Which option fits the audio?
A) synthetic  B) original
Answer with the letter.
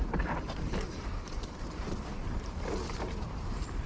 A